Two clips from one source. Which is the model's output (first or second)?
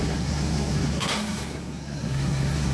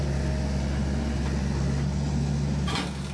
first